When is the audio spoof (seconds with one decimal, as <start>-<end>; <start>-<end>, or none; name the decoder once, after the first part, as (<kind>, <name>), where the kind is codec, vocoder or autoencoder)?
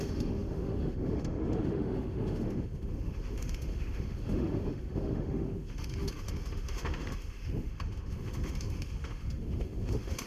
0.0-10.3 (autoencoder, DAC-VAE)